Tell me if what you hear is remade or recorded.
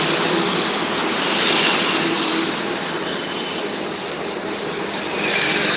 recorded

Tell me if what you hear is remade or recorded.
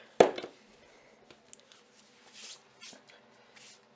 recorded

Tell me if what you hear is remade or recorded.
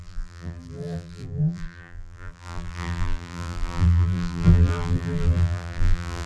remade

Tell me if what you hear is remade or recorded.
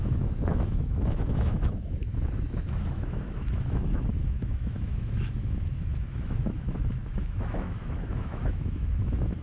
remade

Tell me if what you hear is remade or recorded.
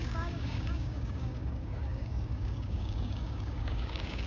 remade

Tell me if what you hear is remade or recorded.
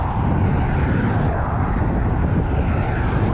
recorded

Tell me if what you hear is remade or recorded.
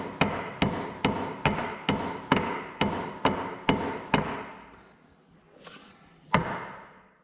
recorded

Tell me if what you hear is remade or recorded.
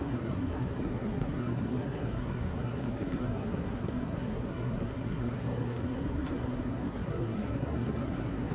remade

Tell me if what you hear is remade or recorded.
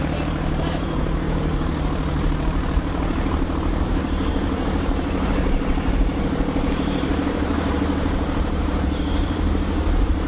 remade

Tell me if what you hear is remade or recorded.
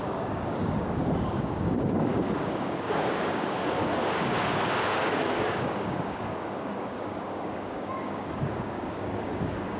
remade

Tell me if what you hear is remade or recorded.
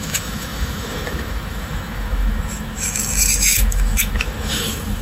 remade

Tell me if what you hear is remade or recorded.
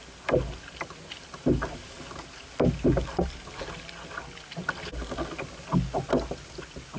recorded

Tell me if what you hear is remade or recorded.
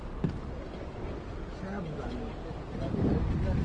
recorded